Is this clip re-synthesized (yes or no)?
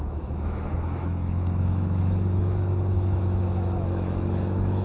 yes